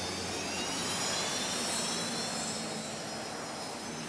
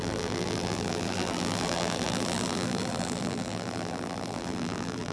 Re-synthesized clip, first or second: second